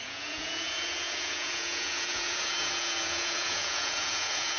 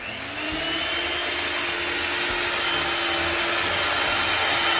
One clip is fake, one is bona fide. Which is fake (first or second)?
first